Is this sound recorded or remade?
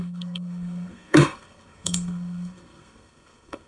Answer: remade